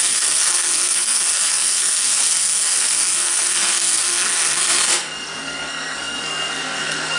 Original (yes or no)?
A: no